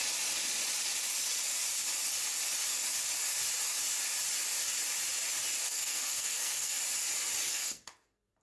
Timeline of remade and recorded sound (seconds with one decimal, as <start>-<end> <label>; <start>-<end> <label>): 0.0-5.6 recorded; 5.6-6.8 remade; 6.8-7.5 recorded; 7.5-8.4 remade

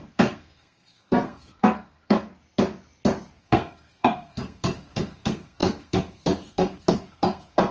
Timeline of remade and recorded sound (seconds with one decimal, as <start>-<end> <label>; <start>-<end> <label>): 0.0-2.3 remade; 2.3-3.4 recorded; 3.4-7.7 remade